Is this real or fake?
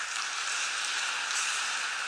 real